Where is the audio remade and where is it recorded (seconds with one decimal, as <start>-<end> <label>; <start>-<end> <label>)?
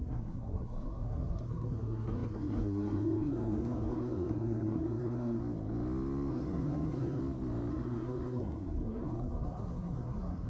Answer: 0.0-5.4 remade; 5.4-6.3 recorded; 6.3-7.2 remade; 7.2-7.7 recorded; 7.7-10.5 remade